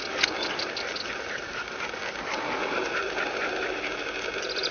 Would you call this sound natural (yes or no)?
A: yes